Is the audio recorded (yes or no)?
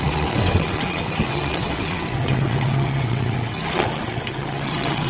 no